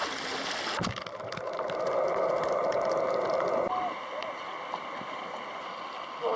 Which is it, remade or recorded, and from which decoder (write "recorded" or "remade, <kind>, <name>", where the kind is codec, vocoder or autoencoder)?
recorded